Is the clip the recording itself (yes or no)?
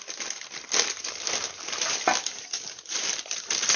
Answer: yes